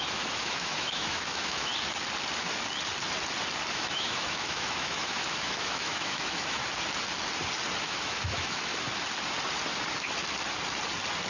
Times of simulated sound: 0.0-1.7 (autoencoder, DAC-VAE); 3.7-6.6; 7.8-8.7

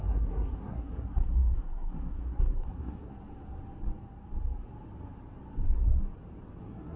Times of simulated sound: 0.0-3.1 (codec, SNAC); 6.6-7.0

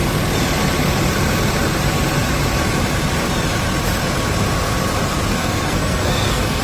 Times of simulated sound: 5.3-6.6 (codec, SNAC)